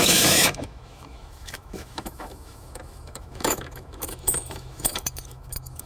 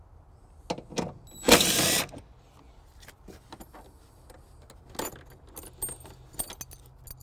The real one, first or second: second